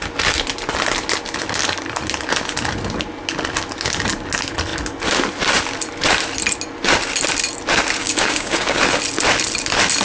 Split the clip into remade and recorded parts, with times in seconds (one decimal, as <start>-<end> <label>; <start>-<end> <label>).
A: 0.0-8.0 recorded; 8.0-8.8 remade; 8.8-10.0 recorded

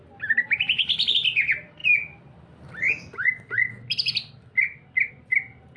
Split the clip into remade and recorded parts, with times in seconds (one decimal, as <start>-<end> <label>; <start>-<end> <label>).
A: 0.0-5.8 recorded